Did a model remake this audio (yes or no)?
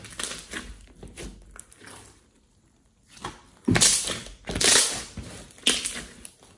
no